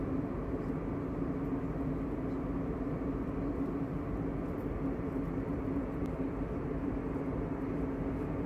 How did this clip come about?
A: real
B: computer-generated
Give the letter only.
A